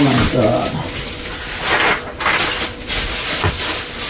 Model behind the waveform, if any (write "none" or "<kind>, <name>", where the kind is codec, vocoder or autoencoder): none